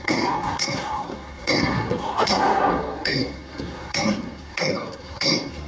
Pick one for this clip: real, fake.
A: fake